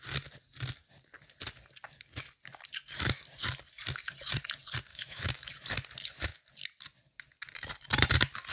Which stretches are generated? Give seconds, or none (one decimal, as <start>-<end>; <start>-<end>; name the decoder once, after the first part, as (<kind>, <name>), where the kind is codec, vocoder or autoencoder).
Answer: 4.9-5.5 (autoencoder, DAC-VAE)